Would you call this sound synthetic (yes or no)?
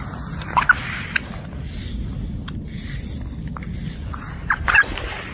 no